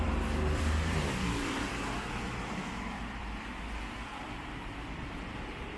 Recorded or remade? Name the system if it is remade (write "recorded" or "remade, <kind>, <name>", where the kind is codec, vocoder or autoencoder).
remade, vocoder, BigVGAN v2